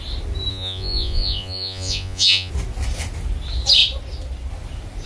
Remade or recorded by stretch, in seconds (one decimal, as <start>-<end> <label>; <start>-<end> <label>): 0.0-0.5 recorded; 0.5-2.5 remade; 2.5-5.1 recorded